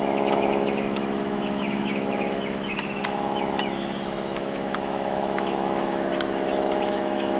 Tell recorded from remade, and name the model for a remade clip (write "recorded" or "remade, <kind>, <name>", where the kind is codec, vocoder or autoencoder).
remade, autoencoder, DAC-VAE